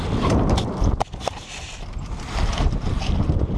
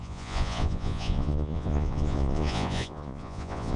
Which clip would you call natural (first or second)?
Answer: first